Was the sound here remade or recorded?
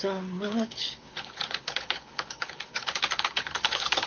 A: remade